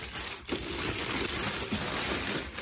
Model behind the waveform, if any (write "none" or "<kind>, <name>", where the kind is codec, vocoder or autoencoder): none